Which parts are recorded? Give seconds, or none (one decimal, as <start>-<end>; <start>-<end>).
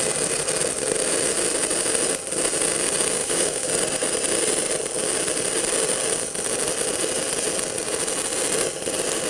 0.0-3.2; 3.7-9.3